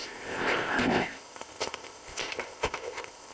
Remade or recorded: remade